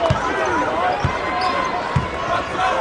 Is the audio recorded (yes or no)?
yes